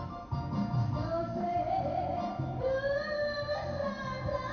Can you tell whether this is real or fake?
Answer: real